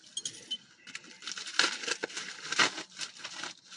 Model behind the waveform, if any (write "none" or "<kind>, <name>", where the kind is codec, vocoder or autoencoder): none